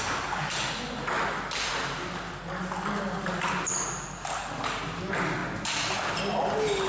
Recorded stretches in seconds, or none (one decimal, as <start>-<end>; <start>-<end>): 0.0-6.9